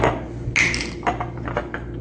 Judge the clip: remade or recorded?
recorded